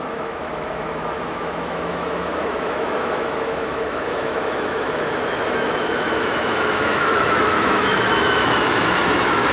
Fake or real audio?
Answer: fake